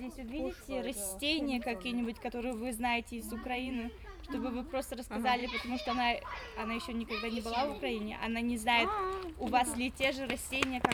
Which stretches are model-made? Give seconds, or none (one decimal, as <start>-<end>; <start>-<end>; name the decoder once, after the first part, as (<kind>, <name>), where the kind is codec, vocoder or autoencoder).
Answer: 3.2-4.1 (vocoder, Vocos); 5.4-5.9